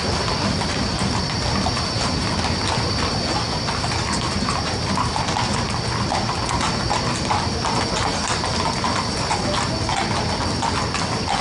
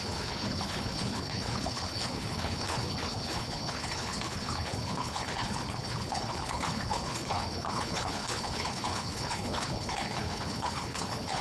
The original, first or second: first